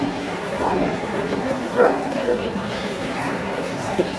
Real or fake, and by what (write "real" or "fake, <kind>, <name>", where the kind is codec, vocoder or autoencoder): fake, codec, SNAC